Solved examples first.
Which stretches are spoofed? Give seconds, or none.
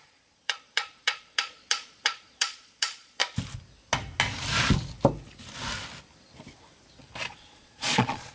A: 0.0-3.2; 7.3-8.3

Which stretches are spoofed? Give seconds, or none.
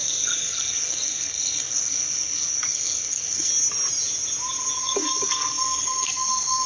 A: 0.0-3.5; 4.8-6.7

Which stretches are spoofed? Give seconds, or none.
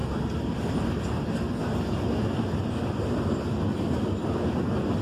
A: none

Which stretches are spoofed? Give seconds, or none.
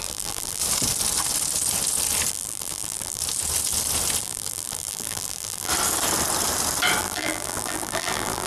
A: 0.0-0.6; 2.3-3.2; 4.2-5.7; 7.0-8.5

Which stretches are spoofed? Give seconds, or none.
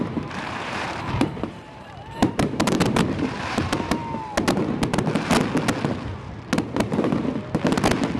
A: 0.0-4.0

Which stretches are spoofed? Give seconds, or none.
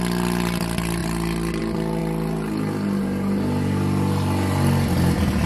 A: none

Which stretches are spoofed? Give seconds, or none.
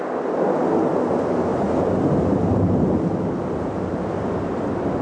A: 1.5-4.0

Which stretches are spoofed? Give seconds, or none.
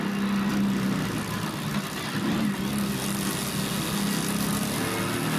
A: none